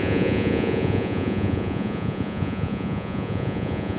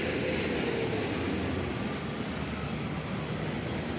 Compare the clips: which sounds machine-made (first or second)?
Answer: first